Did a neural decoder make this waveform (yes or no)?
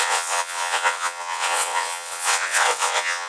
yes